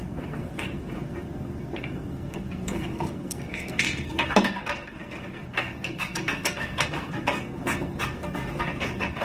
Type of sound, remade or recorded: remade